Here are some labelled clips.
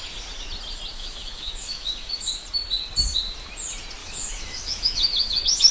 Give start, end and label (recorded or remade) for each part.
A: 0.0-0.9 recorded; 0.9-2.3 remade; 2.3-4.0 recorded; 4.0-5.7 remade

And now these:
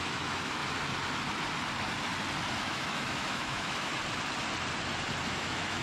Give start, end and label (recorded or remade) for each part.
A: 0.0-0.6 remade; 0.6-2.6 recorded; 2.6-3.9 remade; 3.9-5.3 recorded; 5.3-5.8 remade

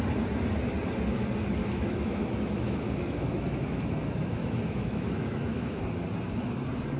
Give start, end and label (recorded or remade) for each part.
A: 0.0-1.6 recorded; 1.6-5.8 remade; 5.8-7.0 recorded

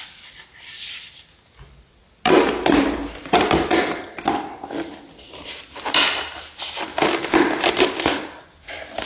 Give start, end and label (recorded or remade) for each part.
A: 0.0-0.5 recorded; 0.5-1.1 remade; 1.1-2.0 recorded; 2.0-5.9 remade; 5.9-9.1 recorded

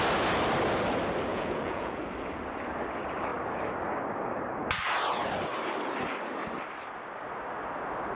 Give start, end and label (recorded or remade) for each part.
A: 0.0-1.3 recorded; 1.3-2.0 remade; 2.0-8.2 recorded

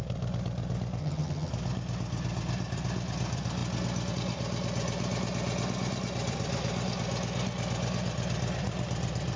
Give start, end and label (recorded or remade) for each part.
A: 0.0-1.0 recorded; 1.0-1.5 remade; 1.5-9.4 recorded

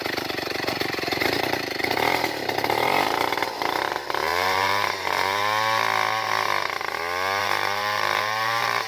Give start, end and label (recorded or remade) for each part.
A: 0.0-5.4 remade; 5.4-7.4 recorded; 7.4-8.9 remade